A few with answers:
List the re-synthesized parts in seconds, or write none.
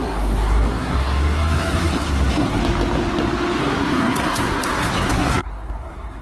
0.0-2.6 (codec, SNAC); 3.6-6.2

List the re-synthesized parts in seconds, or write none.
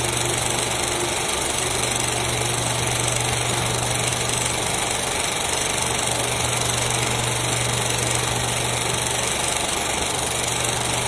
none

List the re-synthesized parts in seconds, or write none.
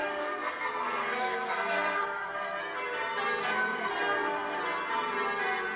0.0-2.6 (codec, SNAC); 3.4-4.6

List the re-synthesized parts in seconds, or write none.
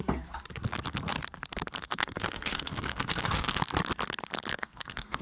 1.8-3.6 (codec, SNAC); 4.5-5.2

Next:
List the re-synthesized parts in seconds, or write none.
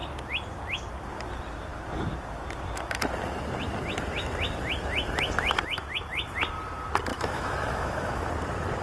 7.1-8.3 (autoencoder, DAC-VAE)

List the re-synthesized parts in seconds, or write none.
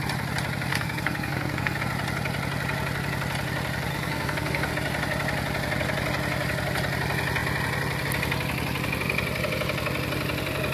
0.7-1.8 (codec, SNAC); 3.9-4.7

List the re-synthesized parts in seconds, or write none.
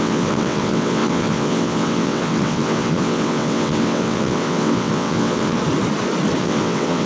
0.0-5.6 (vocoder, WaveNeXt); 6.4-7.1